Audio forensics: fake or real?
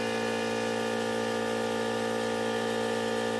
real